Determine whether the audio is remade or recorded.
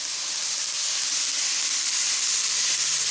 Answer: recorded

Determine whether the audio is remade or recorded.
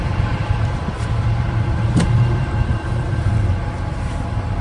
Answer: remade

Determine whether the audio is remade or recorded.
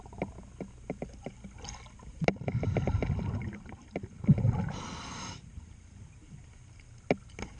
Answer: recorded